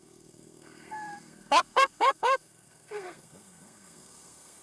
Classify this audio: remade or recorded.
remade